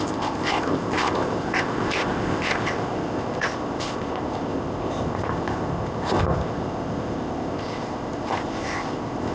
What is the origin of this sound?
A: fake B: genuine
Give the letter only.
A